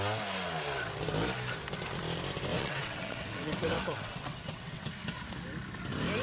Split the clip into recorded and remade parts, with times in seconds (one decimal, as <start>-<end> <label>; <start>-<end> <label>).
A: 0.0-2.5 recorded; 2.5-4.9 remade; 4.9-6.2 recorded

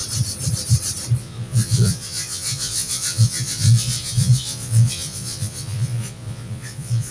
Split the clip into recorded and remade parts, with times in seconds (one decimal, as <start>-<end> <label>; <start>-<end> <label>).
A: 0.0-1.2 recorded; 1.2-7.1 remade

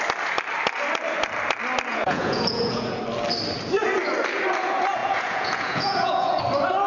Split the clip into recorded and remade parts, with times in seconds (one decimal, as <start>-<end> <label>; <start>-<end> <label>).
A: 0.0-1.9 recorded; 1.9-3.0 remade; 3.0-5.0 recorded; 5.0-6.4 remade; 6.4-6.9 recorded